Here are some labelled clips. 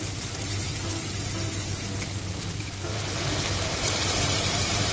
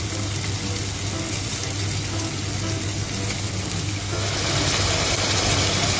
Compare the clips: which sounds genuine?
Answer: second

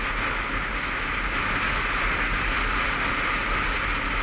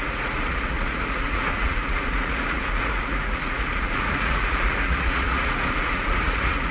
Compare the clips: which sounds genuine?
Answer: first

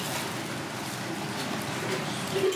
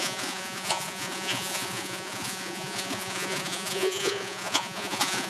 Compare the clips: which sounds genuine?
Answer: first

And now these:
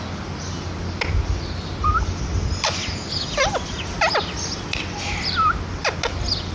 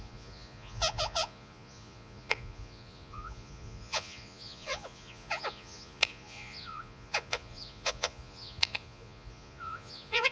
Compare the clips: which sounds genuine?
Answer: first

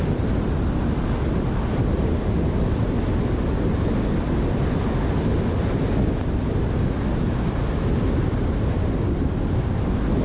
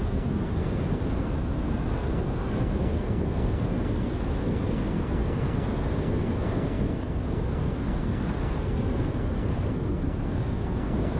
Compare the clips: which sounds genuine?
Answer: first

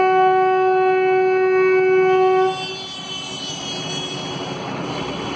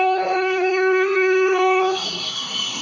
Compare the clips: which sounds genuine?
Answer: first